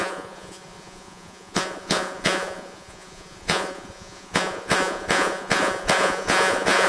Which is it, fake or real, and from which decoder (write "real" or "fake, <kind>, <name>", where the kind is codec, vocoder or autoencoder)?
fake, vocoder, Vocos